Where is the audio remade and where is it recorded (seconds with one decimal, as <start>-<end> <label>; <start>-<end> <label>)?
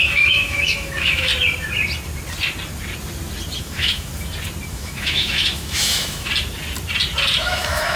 0.0-1.3 remade; 1.3-3.6 recorded; 3.6-4.1 remade; 4.1-4.7 recorded; 4.7-6.3 remade; 6.3-7.4 recorded; 7.4-8.0 remade